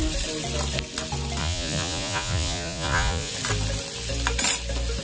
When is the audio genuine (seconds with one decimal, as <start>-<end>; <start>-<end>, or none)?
0.0-1.4; 3.3-5.0